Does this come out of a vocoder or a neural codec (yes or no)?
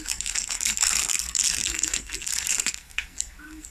yes